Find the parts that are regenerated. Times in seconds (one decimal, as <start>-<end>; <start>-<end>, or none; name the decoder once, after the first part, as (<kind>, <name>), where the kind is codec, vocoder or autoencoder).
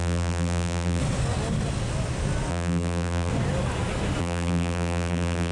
0.0-1.0 (vocoder, BigVGAN v2); 2.5-3.3; 4.2-5.5